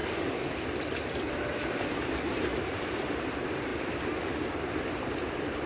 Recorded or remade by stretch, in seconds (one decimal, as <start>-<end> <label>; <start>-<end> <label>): 0.0-1.3 recorded; 1.3-2.5 remade; 2.5-3.0 recorded; 3.0-3.7 remade; 3.7-4.3 recorded; 4.3-5.7 remade